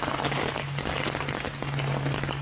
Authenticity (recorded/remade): recorded